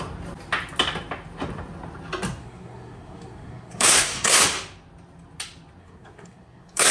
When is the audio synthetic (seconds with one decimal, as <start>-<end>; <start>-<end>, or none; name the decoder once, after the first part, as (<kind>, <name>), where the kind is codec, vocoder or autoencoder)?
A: 2.4-4.4 (codec, SNAC); 5.8-6.9